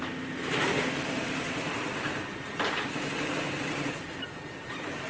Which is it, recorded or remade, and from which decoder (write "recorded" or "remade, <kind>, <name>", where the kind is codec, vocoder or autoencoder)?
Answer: remade, vocoder, BigVGAN v2